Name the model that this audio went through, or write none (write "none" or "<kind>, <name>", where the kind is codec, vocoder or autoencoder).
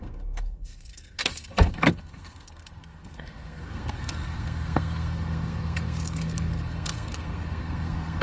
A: codec, SNAC